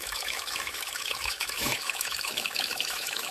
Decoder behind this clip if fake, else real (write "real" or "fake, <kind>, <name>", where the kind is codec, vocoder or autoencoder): fake, autoencoder, DAC-VAE